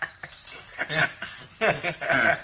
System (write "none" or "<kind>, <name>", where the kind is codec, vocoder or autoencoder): none